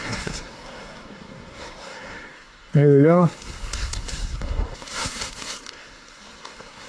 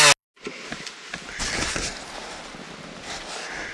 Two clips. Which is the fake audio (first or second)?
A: first